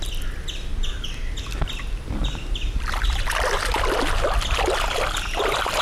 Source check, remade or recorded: recorded